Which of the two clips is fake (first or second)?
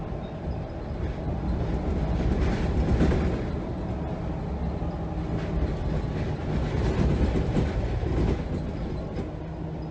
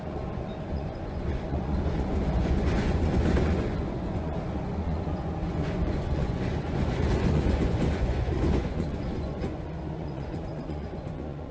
second